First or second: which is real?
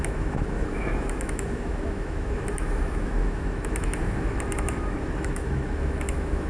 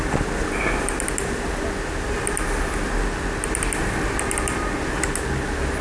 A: second